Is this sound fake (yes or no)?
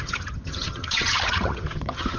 yes